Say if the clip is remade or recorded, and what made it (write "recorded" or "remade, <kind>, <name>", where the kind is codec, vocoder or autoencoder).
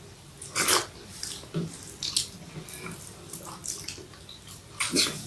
recorded